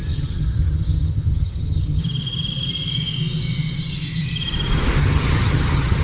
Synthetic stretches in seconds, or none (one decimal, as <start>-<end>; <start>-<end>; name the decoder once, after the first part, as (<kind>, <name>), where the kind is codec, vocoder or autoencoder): 0.0-2.0 (vocoder, HiFi-GAN); 5.0-6.0